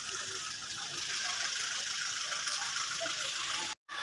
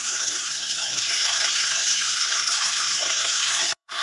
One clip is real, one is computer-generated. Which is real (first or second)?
first